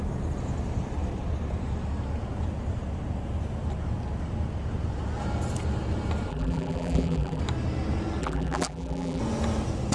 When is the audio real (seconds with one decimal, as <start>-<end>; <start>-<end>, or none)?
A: 0.0-6.3; 7.4-8.2; 9.2-9.9